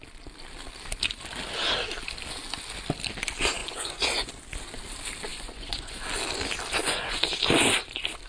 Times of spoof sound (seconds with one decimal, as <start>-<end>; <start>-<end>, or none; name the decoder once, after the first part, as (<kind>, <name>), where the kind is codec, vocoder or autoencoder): 3.6-4.3 (vocoder, Vocos); 5.3-6.0; 6.8-7.3